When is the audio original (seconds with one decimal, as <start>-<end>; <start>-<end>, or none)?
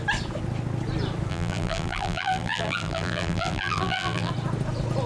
0.0-1.3; 4.3-5.1